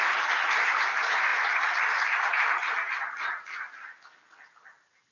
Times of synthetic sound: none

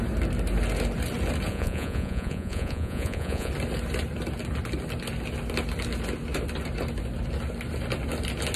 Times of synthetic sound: 1.5-3.5 (vocoder, Vocos)

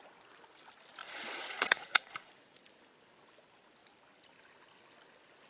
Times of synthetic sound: 1.0-2.3 (vocoder, Vocos)

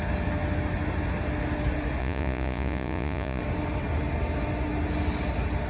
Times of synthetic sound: 2.0-3.4 (vocoder, Vocos)

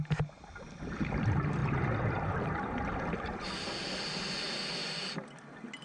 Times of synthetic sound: none

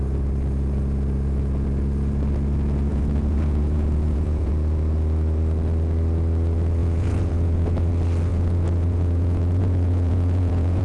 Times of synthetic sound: 2.9-4.5 (vocoder, Vocos); 6.8-7.9; 8.3-10.8

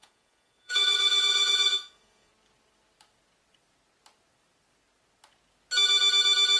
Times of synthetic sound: 0.0-2.3 (vocoder, Vocos)